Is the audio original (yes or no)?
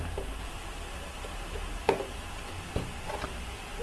yes